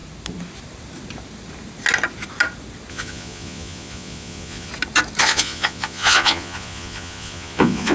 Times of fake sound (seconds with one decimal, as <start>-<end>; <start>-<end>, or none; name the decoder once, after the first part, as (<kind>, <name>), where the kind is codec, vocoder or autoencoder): 2.9-4.7 (vocoder, Vocos); 5.2-7.9